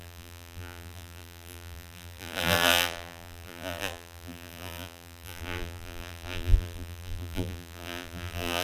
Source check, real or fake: fake